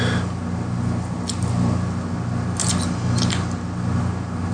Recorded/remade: recorded